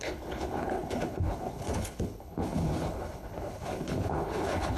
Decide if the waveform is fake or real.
fake